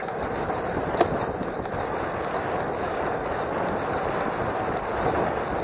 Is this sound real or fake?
real